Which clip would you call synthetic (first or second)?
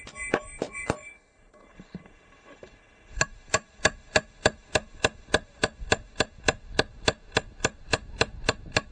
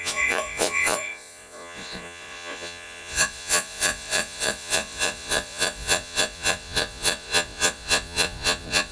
second